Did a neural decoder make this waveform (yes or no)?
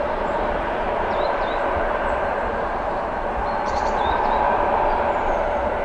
yes